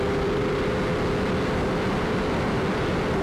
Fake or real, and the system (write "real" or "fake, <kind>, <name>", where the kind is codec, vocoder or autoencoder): real